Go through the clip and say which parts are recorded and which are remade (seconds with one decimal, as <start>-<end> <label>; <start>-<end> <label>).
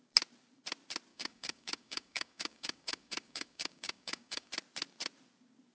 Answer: 0.0-1.1 recorded; 1.1-4.5 remade; 4.5-5.7 recorded